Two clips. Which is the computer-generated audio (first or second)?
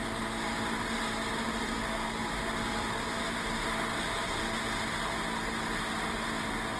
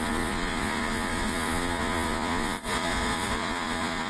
second